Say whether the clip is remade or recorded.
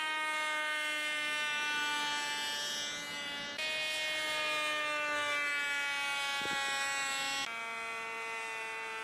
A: recorded